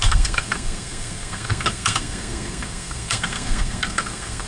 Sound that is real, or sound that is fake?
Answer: fake